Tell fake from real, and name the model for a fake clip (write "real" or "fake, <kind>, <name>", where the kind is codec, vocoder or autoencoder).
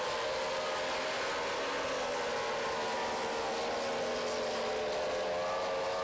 real